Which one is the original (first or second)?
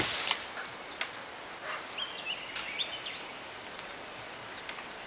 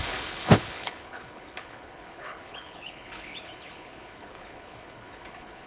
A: first